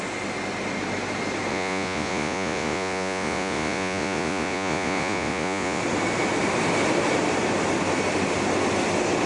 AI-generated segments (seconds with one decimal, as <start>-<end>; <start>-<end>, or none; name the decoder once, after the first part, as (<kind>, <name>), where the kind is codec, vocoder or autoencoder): 1.5-5.8 (vocoder, Vocos)